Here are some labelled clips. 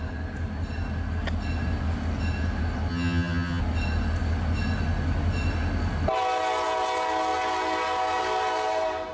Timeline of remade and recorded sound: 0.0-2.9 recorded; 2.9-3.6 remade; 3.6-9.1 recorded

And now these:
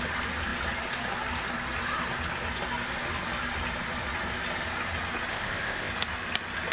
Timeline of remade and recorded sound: 0.0-5.3 recorded; 5.3-5.9 remade; 5.9-6.7 recorded

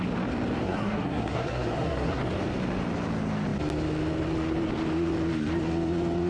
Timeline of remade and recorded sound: 0.0-0.6 recorded; 0.6-2.2 remade; 2.2-6.3 recorded

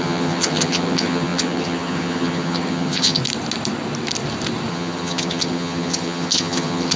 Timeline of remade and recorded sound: 0.0-3.2 remade; 3.2-4.7 recorded; 4.7-7.0 remade

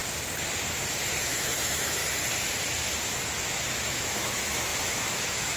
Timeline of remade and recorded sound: 0.0-1.2 recorded; 1.2-2.0 remade; 2.0-3.2 recorded; 3.2-5.6 remade

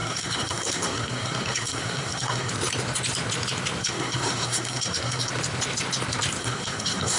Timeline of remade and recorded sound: 0.0-2.5 remade; 2.5-3.8 recorded; 3.8-5.3 remade; 5.3-6.4 recorded; 6.4-7.2 remade